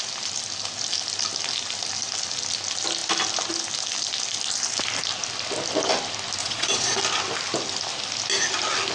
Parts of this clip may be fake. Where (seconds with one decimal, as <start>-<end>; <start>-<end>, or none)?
6.4-7.0